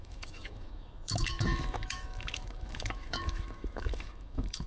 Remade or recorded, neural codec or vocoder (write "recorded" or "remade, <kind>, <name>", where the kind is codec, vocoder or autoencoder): remade, autoencoder, DAC-VAE